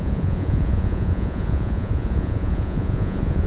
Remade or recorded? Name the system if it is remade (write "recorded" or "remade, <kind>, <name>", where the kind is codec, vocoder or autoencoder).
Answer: remade, vocoder, Vocos